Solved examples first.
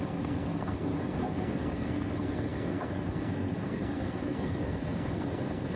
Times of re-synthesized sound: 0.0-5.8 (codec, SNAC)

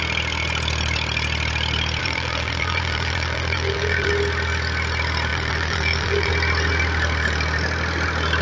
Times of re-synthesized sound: 2.0-4.1 (vocoder, BigVGAN v2); 5.3-6.3

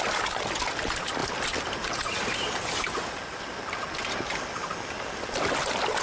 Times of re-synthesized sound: none

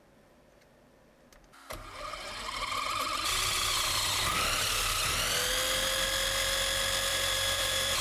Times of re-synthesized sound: 7.1-8.0 (vocoder, BigVGAN v2)

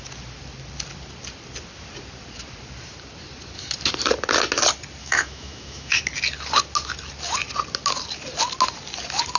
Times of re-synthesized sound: 5.0-6.0 (autoencoder, DAC-VAE)

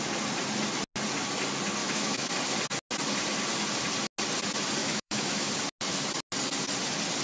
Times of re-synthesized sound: 1.8-2.3 (autoencoder, DAC-VAE); 4.8-5.5